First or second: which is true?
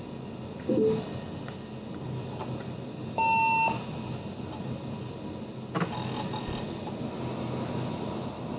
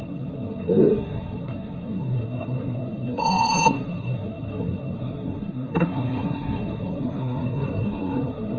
first